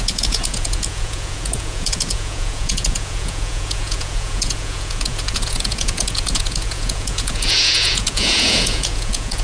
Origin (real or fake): fake